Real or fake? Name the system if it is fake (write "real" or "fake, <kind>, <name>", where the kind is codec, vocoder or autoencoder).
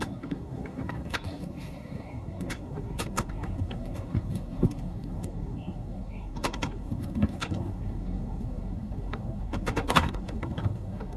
fake, codec, SNAC